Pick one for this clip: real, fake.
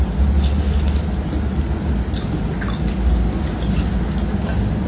real